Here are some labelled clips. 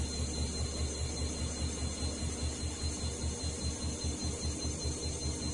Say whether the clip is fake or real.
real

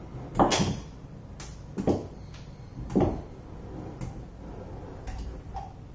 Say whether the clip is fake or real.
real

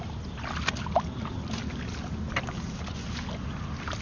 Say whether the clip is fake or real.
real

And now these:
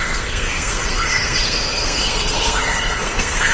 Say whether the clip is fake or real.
fake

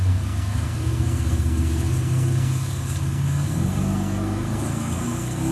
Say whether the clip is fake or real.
fake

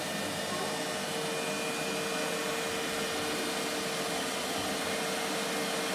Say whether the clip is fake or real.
real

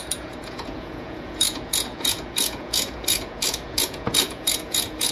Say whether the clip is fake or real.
fake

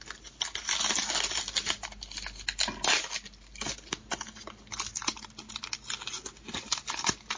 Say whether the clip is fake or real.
real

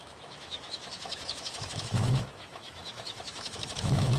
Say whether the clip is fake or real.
fake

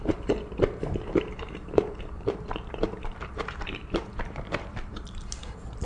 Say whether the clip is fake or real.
fake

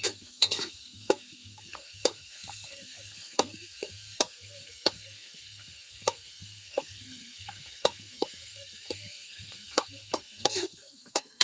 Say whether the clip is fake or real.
fake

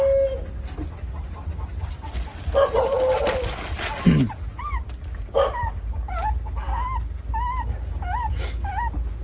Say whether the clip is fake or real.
real